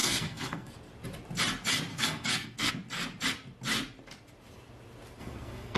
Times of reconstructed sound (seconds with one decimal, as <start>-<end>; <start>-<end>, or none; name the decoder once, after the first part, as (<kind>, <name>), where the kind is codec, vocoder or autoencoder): 0.0-0.7 (codec, SNAC); 1.9-2.7; 5.2-5.8